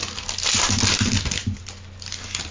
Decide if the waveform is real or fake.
real